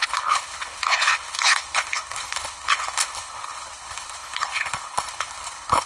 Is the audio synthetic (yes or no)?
yes